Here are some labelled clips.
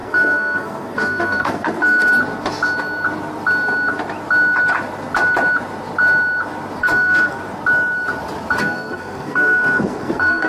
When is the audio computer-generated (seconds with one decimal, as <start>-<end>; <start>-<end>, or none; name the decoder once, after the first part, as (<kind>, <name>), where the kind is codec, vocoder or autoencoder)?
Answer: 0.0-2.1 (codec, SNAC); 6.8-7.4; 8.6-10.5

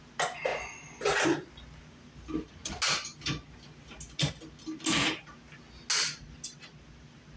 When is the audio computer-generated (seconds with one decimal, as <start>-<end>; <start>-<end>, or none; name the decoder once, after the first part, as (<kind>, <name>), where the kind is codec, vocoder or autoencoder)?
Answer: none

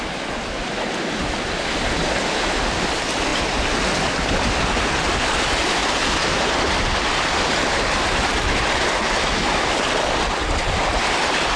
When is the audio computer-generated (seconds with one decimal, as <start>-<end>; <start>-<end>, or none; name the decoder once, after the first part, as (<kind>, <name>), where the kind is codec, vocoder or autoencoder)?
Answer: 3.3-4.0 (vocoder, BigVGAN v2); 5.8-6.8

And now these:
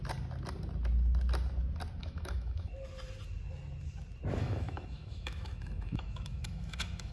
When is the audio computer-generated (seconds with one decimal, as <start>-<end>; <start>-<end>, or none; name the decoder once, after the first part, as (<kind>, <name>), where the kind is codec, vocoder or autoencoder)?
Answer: 2.0-2.7 (autoencoder, DAC-VAE); 4.4-7.1